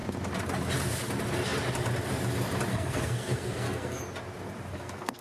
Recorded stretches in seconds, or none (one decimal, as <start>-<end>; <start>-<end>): 0.0-2.7; 4.0-4.7